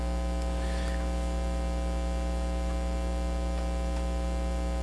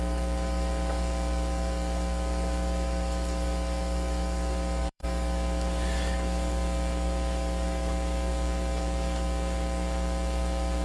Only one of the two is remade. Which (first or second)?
second